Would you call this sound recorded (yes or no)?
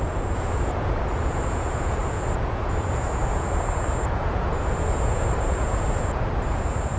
no